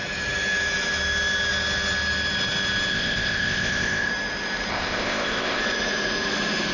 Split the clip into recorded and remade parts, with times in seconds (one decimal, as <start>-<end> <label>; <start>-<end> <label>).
0.0-2.9 recorded; 2.9-4.1 remade; 4.1-4.7 recorded; 4.7-5.6 remade; 5.6-6.7 recorded